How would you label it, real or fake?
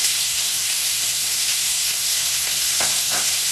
fake